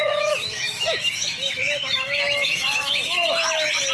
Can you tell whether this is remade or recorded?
remade